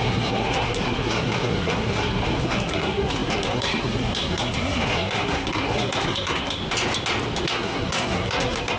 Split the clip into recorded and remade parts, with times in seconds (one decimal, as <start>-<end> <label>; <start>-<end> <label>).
0.0-6.6 remade; 6.6-7.4 recorded; 7.4-8.8 remade